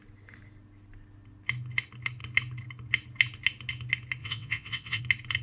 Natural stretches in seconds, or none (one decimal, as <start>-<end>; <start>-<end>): 0.0-4.2; 5.0-5.4